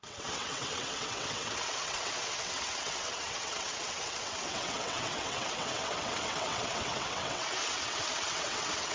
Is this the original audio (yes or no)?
no